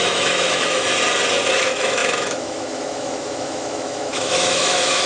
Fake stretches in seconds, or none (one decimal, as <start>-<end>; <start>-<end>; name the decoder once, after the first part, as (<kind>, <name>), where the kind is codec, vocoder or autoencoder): 0.0-0.9 (autoencoder, DAC-VAE); 1.5-5.1